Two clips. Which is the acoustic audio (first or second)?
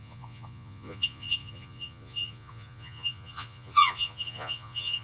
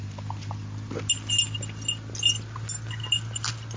second